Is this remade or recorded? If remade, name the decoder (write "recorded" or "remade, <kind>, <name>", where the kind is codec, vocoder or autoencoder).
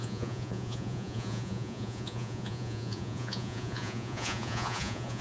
remade, vocoder, Vocos